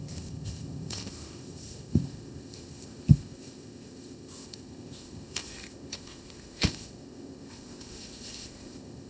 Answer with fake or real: fake